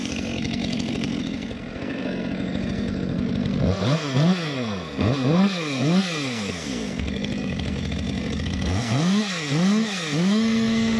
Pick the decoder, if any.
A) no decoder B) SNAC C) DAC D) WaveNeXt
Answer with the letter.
B